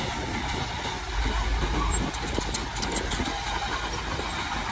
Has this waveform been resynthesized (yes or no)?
no